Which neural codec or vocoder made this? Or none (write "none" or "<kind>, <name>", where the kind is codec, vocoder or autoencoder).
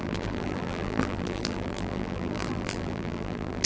vocoder, BigVGAN v2